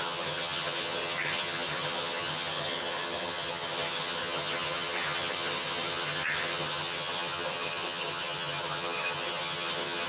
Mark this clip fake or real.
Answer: fake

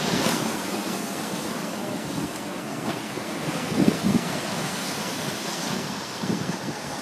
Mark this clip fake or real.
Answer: fake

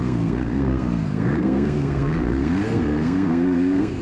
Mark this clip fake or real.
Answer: fake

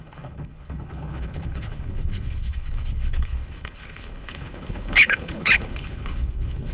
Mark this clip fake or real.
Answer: fake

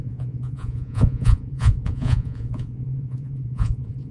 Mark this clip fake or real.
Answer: fake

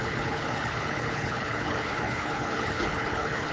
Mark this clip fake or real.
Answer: fake